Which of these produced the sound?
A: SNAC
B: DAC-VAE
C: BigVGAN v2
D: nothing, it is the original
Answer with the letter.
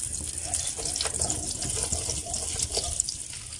D